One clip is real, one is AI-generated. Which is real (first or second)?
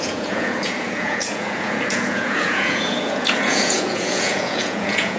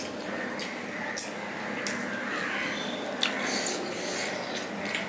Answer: second